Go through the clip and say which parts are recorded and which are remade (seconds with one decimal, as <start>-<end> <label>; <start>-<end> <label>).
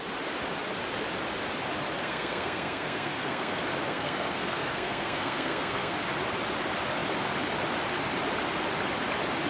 0.0-2.0 recorded; 2.0-6.0 remade; 6.0-9.5 recorded